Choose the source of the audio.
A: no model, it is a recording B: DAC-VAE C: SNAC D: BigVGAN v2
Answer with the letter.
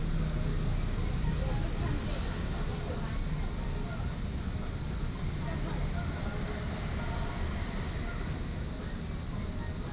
A